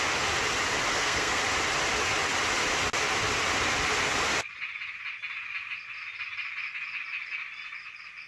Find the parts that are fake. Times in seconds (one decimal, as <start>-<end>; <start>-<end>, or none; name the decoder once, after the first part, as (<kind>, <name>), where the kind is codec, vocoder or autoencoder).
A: 0.9-1.4 (codec, SNAC)